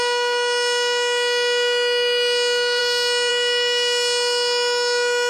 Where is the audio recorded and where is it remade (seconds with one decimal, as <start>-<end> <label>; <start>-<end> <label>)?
0.0-2.8 recorded; 2.8-3.3 remade; 3.3-5.3 recorded